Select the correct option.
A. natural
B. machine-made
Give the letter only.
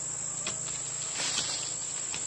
A